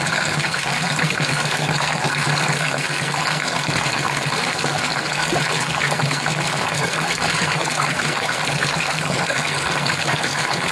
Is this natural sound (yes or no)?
no